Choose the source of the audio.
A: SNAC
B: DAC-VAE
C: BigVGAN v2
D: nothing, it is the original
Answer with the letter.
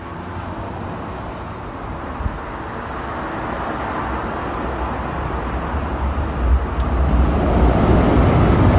D